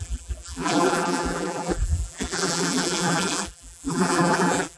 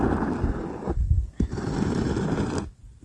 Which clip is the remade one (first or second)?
first